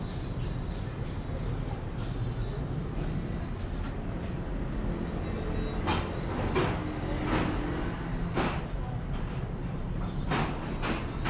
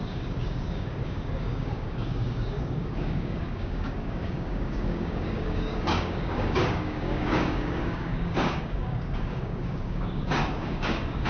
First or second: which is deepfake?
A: second